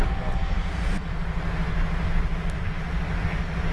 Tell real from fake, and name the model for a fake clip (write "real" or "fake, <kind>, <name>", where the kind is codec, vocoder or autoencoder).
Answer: real